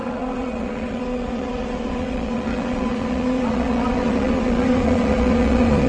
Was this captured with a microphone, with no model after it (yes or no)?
no